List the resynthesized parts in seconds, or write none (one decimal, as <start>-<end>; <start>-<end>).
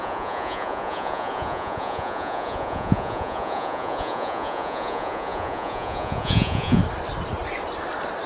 0.0-6.8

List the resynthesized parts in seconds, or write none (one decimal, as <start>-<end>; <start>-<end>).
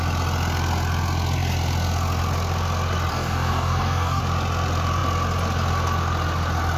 3.1-4.2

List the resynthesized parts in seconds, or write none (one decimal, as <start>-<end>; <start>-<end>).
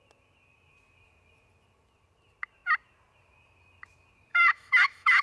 4.3-5.2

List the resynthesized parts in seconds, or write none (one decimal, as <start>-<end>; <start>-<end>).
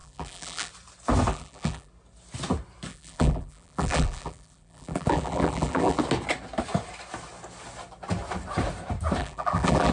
0.0-0.7; 1.3-1.9; 2.9-6.0; 9.2-9.9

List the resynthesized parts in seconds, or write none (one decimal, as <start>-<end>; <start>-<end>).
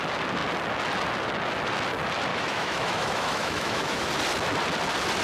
2.3-4.1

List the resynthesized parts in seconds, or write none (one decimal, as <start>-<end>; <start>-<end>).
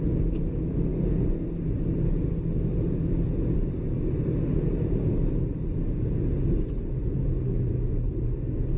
none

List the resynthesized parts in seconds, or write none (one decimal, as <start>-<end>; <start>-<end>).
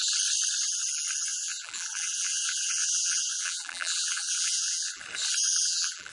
1.3-5.0; 5.5-6.1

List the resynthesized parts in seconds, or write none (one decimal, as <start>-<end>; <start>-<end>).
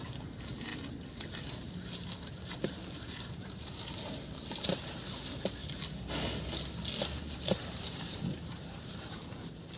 0.0-0.7; 2.4-5.6; 7.2-9.8